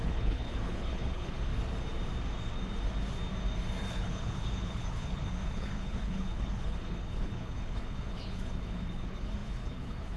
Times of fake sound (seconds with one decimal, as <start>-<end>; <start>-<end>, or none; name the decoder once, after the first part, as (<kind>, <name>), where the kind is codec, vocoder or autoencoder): 0.0-1.5 (codec, HILCodec); 3.9-10.2